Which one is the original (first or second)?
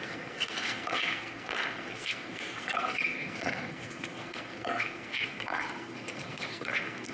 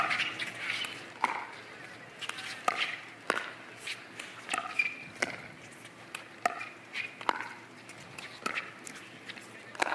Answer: second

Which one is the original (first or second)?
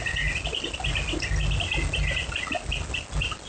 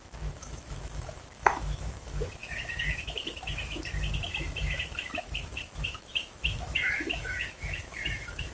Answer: first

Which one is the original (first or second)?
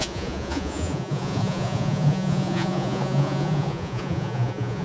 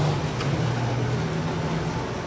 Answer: second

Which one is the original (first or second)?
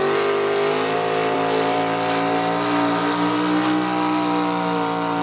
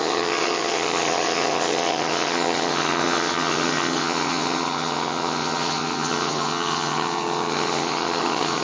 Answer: first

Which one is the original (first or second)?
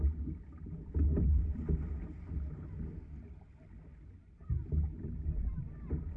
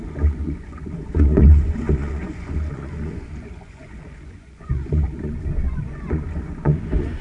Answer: first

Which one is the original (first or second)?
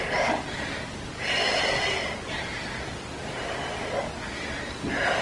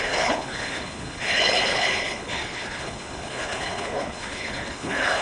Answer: first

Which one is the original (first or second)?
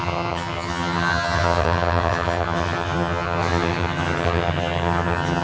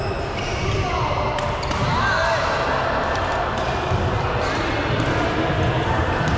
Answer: second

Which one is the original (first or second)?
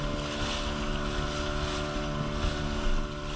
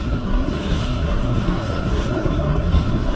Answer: first